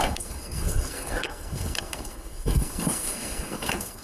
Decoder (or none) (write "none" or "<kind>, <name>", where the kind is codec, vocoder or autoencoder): codec, SNAC